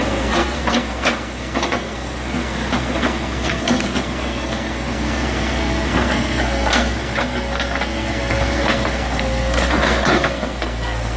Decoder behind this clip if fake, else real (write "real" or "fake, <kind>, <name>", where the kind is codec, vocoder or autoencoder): fake, codec, SNAC